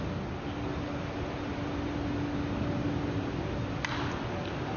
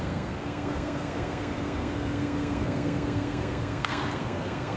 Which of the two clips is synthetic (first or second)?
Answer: second